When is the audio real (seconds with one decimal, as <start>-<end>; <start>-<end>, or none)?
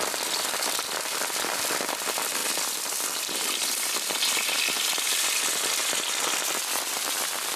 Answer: 2.4-6.0